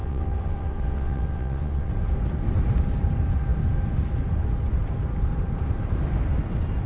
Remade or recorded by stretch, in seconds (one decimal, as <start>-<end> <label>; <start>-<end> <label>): 0.0-1.9 remade; 1.9-6.9 recorded